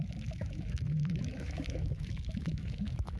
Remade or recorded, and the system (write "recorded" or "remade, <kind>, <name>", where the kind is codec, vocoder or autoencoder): remade, autoencoder, DAC-VAE